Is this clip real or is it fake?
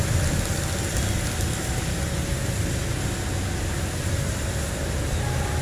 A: real